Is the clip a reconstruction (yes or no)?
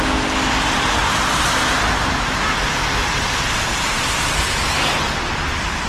no